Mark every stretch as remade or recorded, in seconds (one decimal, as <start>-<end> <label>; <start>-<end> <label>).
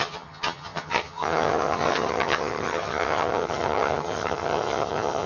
0.0-5.3 remade